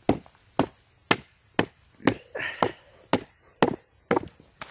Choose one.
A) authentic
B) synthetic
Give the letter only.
A